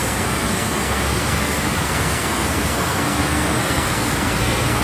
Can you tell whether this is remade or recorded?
remade